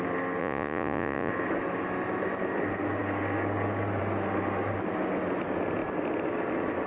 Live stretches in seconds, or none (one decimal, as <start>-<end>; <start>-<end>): 0.0-0.4; 1.3-6.9